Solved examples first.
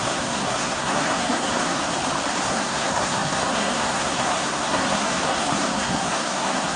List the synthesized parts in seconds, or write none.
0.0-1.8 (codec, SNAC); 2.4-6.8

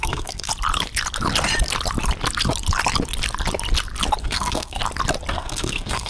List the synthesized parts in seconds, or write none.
0.0-0.5 (codec, SNAC); 4.2-4.8; 5.3-6.1

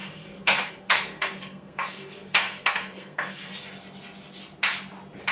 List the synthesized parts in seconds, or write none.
0.0-3.5 (codec, SNAC)

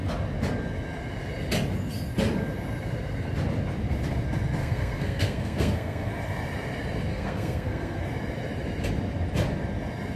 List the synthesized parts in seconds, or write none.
4.6-6.1 (codec, SNAC); 7.1-8.0

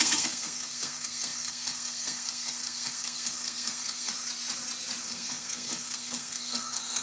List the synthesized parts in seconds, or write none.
0.0-4.1 (codec, SNAC); 5.0-7.0